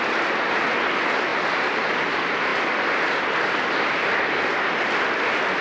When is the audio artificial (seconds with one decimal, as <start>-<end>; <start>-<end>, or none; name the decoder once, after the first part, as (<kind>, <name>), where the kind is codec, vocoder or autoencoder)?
none